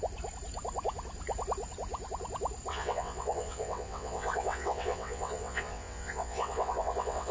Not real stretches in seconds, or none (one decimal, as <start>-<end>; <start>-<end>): 2.7-7.3